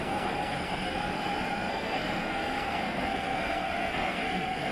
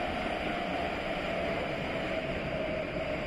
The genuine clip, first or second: second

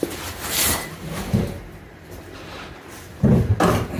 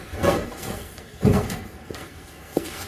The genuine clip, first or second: first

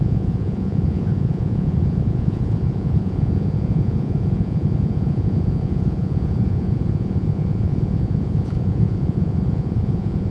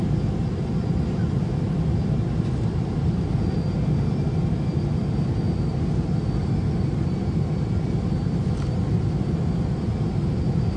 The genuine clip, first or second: second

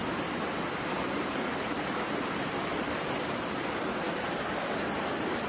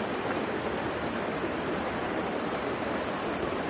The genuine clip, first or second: first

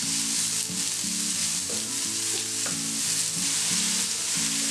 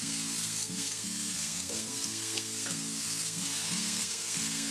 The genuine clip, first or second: first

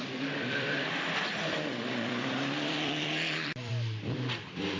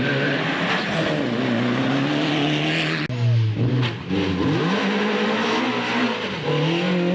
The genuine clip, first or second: second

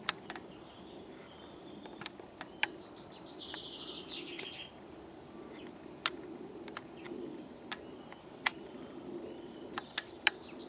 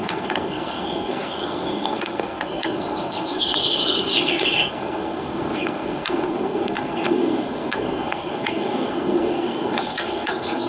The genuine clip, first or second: first